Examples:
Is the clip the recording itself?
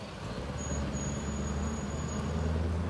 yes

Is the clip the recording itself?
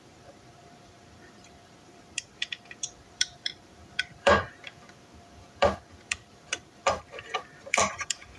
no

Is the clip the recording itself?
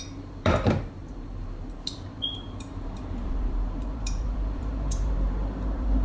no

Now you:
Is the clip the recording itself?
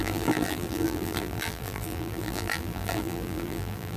no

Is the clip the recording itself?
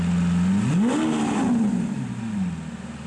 yes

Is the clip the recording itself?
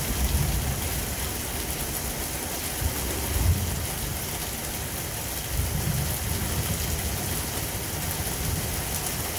yes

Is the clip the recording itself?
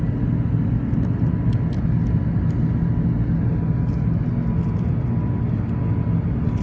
yes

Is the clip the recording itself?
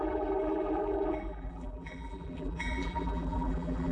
no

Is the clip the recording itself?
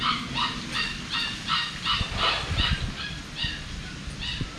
yes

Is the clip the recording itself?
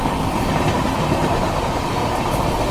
yes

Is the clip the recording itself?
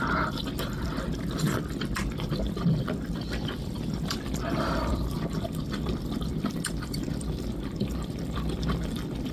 no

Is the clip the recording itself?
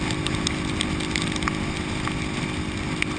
yes